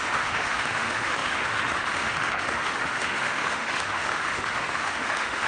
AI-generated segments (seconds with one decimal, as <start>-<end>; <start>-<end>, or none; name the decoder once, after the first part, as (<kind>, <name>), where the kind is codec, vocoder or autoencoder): 0.0-5.5 (autoencoder, DAC-VAE)